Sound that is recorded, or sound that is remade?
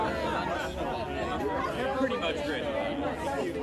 recorded